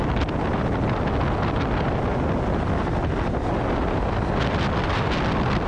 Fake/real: real